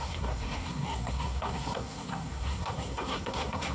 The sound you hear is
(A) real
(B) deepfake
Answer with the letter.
B